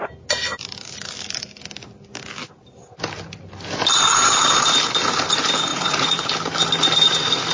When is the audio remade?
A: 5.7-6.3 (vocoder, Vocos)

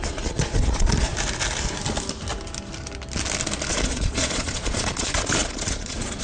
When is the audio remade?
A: 0.0-1.1 (vocoder, Vocos); 3.7-6.2

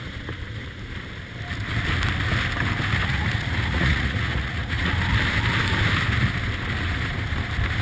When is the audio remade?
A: 3.0-4.9 (vocoder, Vocos)